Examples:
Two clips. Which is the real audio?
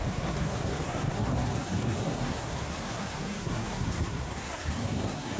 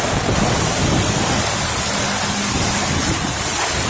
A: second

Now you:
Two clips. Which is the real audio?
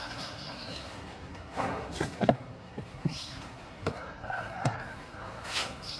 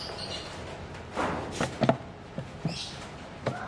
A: second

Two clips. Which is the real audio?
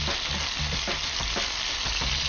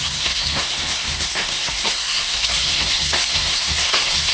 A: first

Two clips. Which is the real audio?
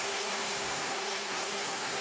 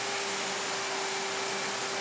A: second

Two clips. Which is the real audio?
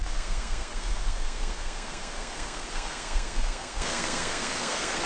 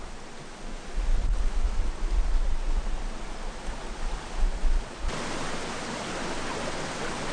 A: second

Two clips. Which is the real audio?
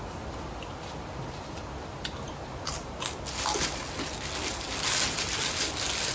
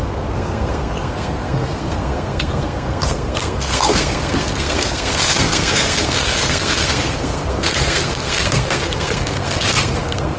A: first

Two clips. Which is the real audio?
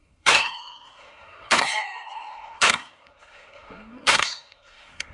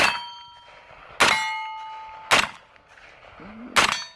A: second